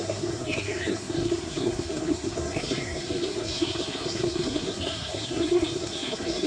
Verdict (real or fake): fake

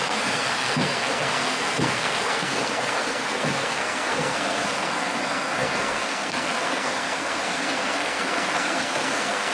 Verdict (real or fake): fake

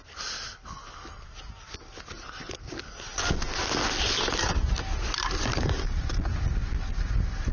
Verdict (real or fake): real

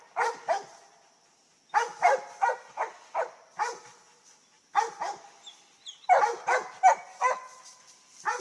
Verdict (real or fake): real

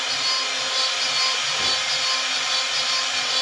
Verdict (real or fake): real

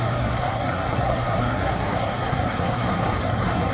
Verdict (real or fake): fake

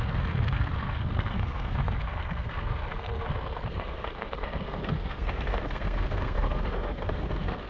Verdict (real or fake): fake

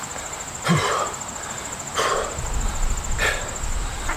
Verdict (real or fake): real